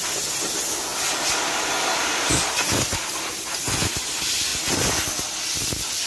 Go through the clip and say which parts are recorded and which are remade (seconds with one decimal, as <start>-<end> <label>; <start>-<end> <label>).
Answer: 0.0-6.1 recorded